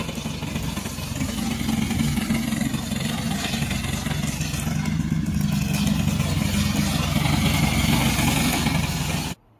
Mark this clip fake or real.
real